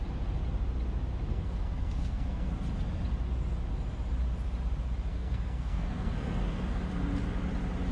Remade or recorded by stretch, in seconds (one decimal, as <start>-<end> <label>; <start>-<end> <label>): 0.0-1.3 recorded; 1.3-2.5 remade; 2.5-5.1 recorded; 5.1-6.8 remade; 6.8-7.9 recorded